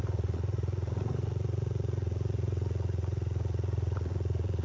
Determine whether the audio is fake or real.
fake